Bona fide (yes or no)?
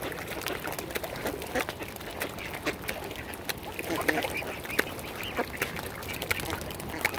yes